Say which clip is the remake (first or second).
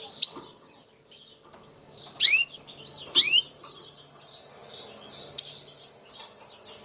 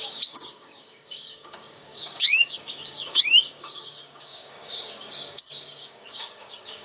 second